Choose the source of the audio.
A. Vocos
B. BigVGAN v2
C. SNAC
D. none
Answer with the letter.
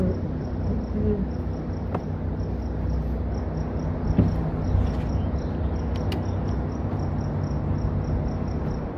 D